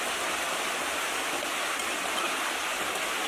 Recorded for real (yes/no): yes